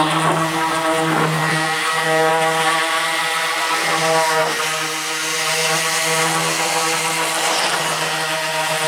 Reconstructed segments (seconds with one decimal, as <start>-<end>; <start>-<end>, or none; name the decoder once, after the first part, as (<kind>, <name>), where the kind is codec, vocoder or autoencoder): 1.4-2.3 (codec, DAC)